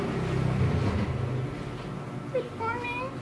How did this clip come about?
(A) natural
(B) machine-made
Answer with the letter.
A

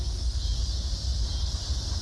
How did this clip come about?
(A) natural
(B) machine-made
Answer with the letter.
B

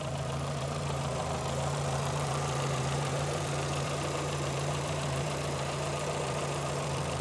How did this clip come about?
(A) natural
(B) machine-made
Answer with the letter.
B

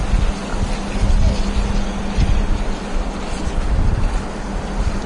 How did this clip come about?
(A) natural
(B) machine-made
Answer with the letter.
A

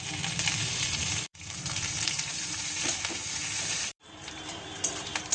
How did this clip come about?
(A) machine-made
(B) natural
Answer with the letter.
A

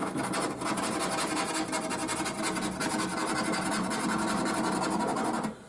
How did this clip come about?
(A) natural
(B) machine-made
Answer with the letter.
A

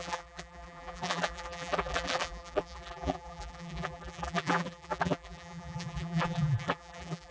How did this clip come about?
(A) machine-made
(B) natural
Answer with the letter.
A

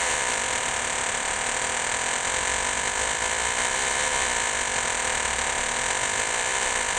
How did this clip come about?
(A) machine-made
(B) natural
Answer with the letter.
B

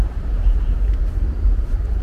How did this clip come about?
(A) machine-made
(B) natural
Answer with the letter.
A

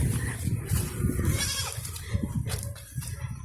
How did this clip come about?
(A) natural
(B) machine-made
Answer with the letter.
B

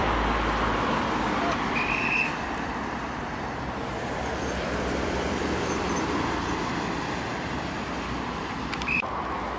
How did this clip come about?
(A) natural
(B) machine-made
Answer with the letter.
B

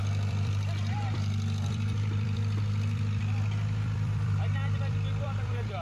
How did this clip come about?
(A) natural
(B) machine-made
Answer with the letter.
B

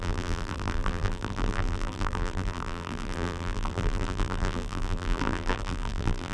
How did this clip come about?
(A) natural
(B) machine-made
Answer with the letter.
B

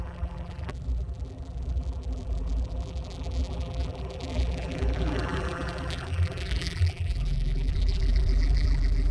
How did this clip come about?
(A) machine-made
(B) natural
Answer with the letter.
A